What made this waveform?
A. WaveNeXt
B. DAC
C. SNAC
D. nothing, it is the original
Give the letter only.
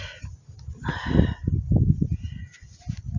D